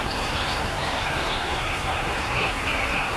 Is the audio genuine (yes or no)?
no